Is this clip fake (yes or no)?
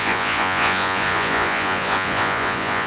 yes